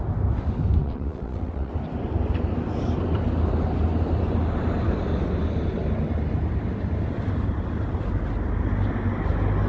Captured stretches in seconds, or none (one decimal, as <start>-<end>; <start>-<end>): 0.0-0.8; 1.7-9.7